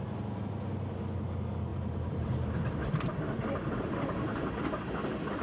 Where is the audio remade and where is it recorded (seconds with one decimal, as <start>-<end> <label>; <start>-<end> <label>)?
0.0-1.7 recorded; 1.7-4.9 remade; 4.9-5.4 recorded